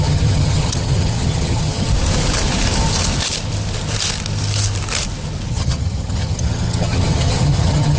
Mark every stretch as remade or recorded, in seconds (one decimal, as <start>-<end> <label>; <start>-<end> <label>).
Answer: 0.0-1.9 remade; 1.9-5.5 recorded; 5.5-8.0 remade